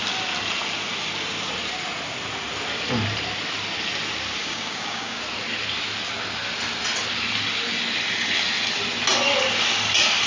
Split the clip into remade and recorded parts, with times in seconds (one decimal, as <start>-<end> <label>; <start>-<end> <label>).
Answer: 0.0-4.4 recorded; 4.4-5.2 remade; 5.2-10.3 recorded